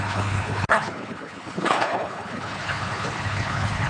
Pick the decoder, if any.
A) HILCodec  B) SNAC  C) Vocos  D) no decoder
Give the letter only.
A